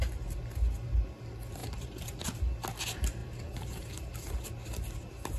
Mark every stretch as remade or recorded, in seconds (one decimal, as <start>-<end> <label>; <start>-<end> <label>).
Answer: 0.0-1.6 recorded; 1.6-2.2 remade; 2.2-3.2 recorded; 3.2-4.5 remade; 4.5-5.4 recorded